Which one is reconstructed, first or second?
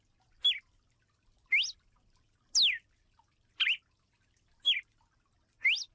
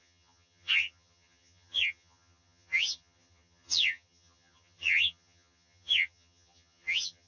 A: second